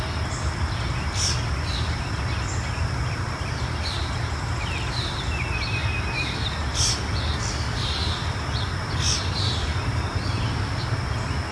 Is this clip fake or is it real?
real